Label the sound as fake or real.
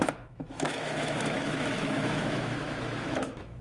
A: fake